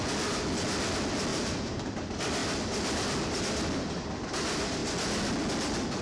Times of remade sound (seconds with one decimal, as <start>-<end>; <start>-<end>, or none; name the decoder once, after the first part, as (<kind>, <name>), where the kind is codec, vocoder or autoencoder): 1.3-1.9 (vocoder, BigVGAN v2)